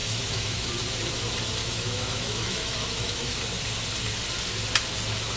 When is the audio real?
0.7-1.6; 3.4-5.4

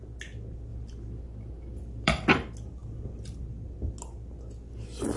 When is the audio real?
0.0-0.7; 2.3-5.2

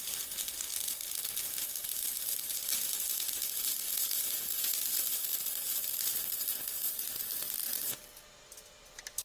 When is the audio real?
0.0-9.2